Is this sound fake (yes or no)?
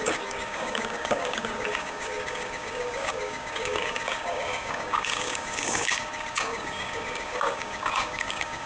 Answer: yes